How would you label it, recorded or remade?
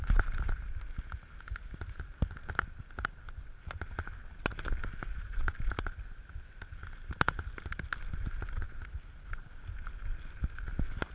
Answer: recorded